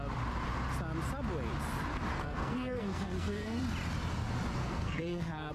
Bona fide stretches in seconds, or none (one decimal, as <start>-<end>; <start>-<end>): 0.0-2.1; 3.6-4.6